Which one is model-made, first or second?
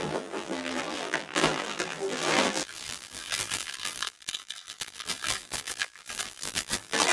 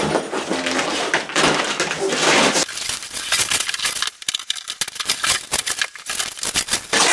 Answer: first